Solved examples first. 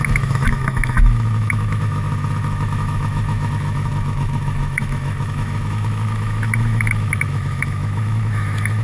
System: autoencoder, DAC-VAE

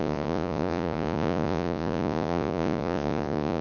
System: vocoder, Vocos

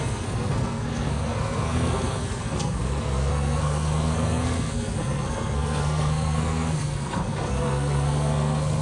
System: codec, SNAC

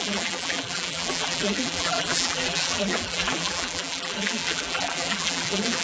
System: vocoder, BigVGAN v2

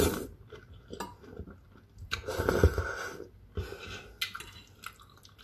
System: none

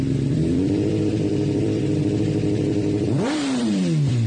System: vocoder, BigVGAN v2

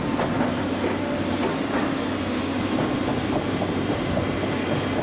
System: none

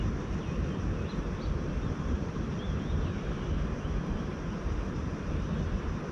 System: none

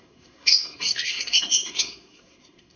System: codec, SNAC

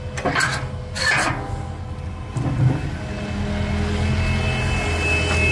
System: none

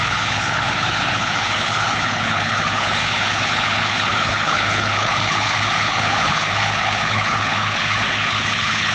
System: codec, HILCodec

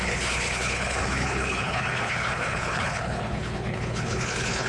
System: codec, HILCodec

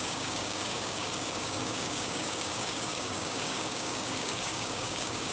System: codec, DAC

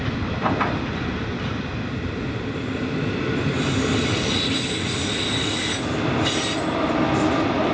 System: none